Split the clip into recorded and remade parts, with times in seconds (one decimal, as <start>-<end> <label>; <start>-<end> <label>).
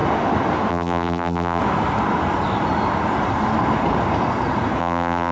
0.0-0.7 recorded; 0.7-1.6 remade; 1.6-4.8 recorded; 4.8-5.3 remade